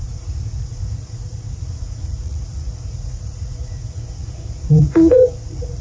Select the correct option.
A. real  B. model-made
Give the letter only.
B